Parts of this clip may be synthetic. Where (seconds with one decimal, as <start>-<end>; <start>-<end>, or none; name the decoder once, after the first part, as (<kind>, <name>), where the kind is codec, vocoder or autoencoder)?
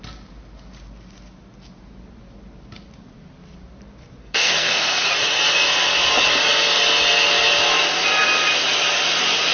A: 4.2-5.1 (codec, SNAC)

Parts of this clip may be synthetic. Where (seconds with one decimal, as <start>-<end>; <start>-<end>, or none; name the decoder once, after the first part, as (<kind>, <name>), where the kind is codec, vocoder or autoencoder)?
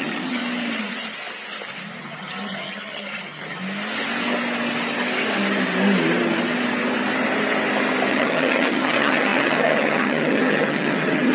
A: 0.0-0.4 (vocoder, HiFi-GAN); 2.0-3.6; 8.1-11.3